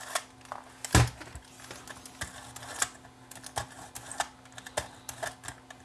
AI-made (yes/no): no